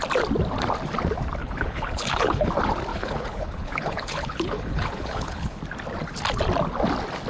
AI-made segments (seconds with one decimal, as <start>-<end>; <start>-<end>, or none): 1.4-2.5; 2.9-5.6